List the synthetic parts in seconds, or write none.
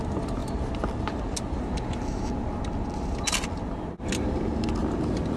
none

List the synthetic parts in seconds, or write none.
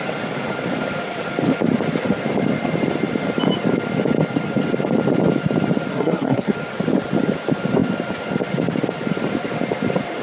5.9-6.5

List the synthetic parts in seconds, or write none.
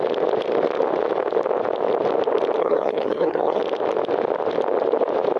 2.6-3.6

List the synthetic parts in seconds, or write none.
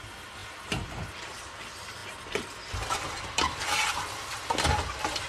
none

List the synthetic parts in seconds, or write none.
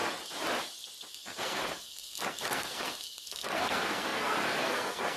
1.1-5.2